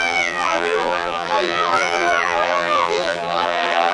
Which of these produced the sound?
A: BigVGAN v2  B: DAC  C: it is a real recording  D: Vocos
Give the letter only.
A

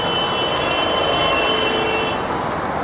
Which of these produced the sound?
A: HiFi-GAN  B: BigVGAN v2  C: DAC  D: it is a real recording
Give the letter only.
B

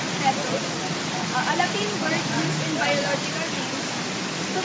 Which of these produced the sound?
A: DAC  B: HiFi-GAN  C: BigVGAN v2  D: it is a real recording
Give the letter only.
D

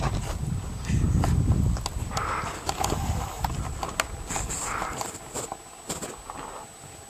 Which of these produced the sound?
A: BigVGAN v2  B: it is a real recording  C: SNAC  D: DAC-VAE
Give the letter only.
B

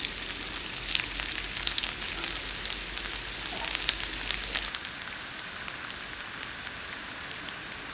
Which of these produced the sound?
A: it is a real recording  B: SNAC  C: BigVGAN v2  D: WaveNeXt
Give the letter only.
A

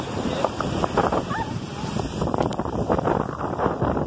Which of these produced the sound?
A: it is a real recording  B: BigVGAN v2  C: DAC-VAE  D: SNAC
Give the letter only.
A